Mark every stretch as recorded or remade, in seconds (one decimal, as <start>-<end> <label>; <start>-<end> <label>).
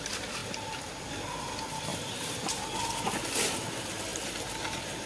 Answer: 0.0-5.1 recorded